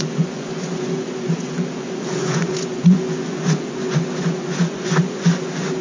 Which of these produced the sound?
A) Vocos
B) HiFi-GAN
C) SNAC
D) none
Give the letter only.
A